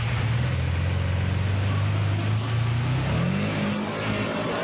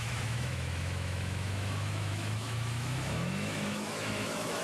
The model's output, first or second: second